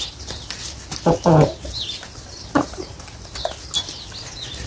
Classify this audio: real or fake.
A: real